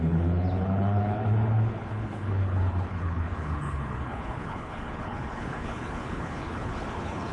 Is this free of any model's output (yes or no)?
no